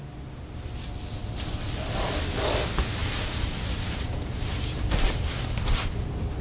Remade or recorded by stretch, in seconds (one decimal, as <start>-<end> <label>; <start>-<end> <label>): 0.0-3.0 recorded; 3.0-5.9 remade; 5.9-6.4 recorded